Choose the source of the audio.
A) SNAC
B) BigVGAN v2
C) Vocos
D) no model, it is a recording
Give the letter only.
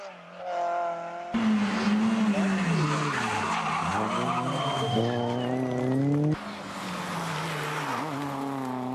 D